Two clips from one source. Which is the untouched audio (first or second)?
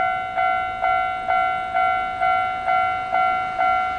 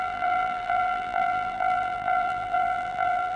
first